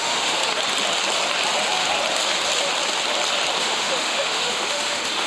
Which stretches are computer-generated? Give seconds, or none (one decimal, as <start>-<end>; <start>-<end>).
0.0-0.4; 3.6-5.3